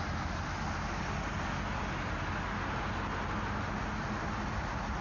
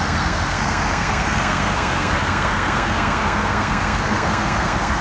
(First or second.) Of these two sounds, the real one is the first